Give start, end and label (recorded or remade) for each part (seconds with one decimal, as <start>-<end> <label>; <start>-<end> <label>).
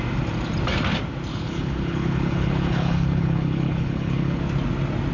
0.0-1.3 recorded; 1.3-4.4 remade; 4.4-5.1 recorded